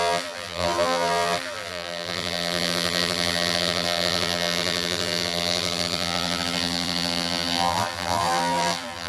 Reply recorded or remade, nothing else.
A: remade